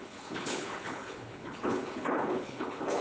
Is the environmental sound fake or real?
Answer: fake